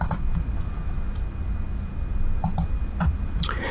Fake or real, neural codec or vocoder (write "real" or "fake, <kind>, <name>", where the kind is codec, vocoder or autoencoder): real